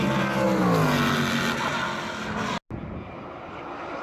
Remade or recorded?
recorded